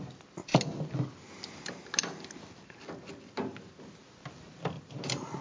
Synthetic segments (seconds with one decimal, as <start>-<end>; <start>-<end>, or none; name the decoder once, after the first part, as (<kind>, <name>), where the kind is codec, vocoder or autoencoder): none